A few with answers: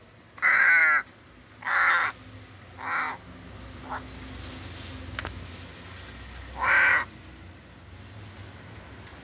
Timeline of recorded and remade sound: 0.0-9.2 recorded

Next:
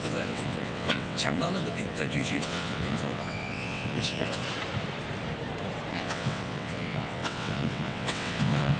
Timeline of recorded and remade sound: 0.0-4.4 remade; 4.4-5.9 recorded; 5.9-8.8 remade

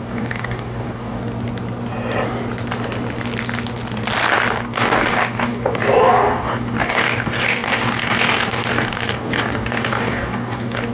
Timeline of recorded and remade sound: 0.0-1.2 remade; 1.2-4.5 recorded; 4.5-10.9 remade